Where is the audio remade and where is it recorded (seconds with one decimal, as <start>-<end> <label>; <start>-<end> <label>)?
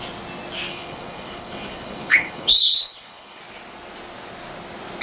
0.0-0.7 recorded; 0.7-3.4 remade; 3.4-5.0 recorded